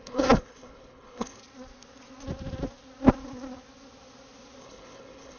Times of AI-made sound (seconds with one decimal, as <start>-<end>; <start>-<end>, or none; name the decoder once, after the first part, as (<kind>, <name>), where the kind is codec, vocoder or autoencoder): 0.0-1.4 (codec, HILCodec); 4.6-5.4